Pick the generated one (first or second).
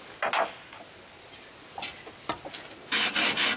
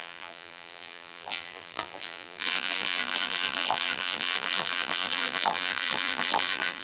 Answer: second